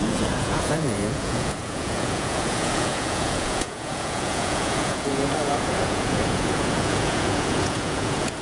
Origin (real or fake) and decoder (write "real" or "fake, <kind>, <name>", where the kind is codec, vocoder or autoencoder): fake, vocoder, Vocos